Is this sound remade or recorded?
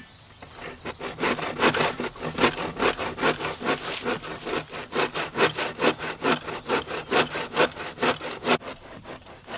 recorded